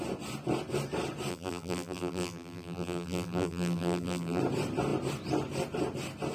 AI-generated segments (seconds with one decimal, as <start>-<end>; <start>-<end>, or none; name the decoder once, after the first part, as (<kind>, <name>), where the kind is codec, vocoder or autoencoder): 1.3-4.4 (vocoder, BigVGAN v2)